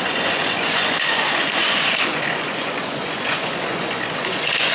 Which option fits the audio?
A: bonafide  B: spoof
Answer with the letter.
B